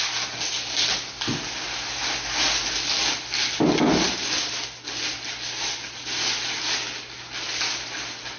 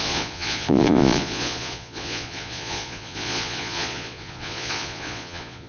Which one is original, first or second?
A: first